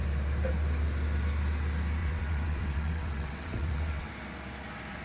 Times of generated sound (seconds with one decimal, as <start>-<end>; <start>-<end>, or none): 2.0-4.1